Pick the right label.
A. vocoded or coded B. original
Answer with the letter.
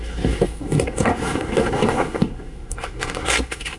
A